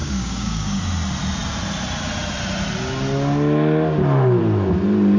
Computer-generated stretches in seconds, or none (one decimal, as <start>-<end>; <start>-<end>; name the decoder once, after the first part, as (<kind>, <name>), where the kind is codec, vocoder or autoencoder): 0.0-0.8 (codec, DAC)